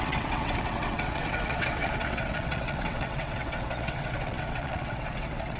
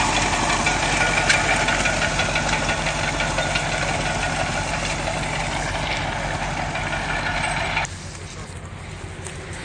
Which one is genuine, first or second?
second